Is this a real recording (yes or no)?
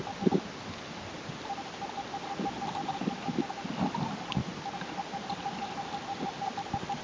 yes